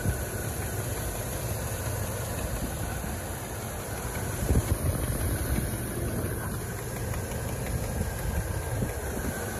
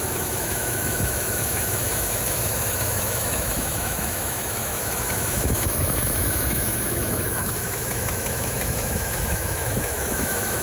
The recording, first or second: first